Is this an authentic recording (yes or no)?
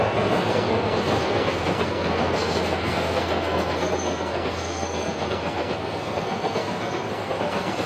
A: no